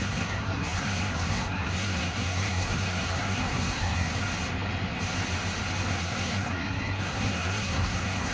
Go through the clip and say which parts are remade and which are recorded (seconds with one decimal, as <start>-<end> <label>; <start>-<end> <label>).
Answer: 0.0-4.1 remade; 4.1-5.9 recorded; 5.9-8.3 remade